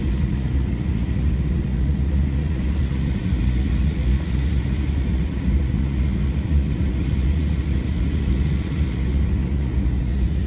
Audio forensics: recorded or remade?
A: remade